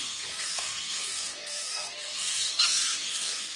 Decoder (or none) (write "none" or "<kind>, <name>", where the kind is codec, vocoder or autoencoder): codec, SNAC